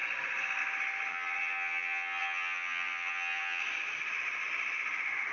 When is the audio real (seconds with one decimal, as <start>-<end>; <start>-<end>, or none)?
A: 0.0-1.1; 3.6-5.3

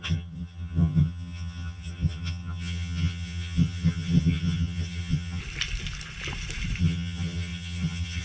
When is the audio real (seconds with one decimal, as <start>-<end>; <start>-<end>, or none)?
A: 5.4-6.8